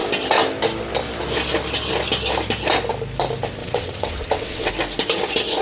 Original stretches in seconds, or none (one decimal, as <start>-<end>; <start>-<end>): 0.0-3.6; 4.7-5.6